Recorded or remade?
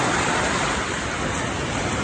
recorded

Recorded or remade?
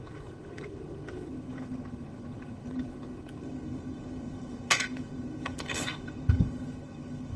remade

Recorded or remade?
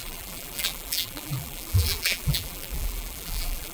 remade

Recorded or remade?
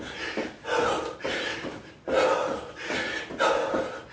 recorded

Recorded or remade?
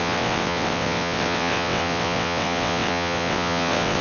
remade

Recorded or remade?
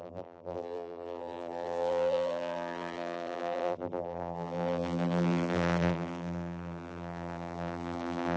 remade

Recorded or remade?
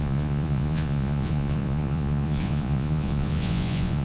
remade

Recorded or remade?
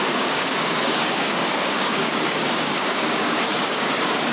remade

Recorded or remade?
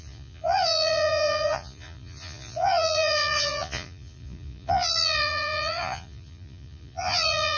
remade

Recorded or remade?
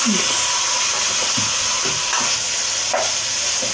recorded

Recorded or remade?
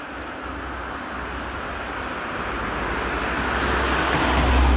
recorded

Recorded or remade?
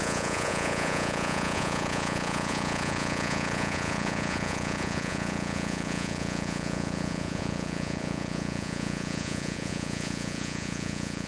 remade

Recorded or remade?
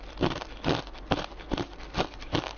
recorded